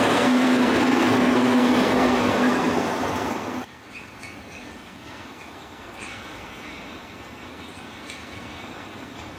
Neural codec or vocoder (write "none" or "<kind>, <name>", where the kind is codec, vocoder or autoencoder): codec, SNAC